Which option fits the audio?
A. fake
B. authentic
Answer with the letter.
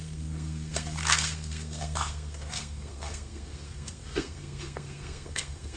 A